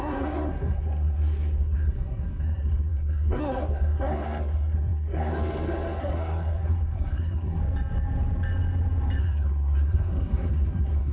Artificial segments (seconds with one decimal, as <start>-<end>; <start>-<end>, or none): 0.0-7.6; 9.2-11.1